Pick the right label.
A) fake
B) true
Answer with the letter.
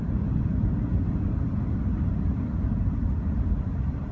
B